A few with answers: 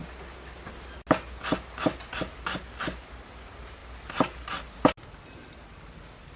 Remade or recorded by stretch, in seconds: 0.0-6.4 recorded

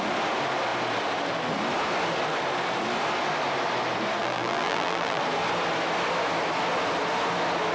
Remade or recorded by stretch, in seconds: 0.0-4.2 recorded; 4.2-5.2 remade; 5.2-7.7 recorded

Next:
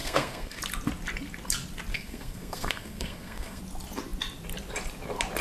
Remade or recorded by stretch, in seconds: 0.0-0.6 remade; 0.6-1.9 recorded; 1.9-3.6 remade; 3.6-5.4 recorded

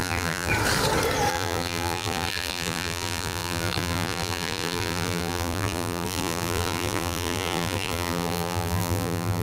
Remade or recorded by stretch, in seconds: 0.0-0.5 remade; 0.5-1.3 recorded; 1.3-9.4 remade

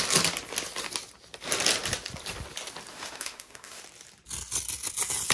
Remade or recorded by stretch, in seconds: 0.0-2.9 recorded; 2.9-3.8 remade; 3.8-5.3 recorded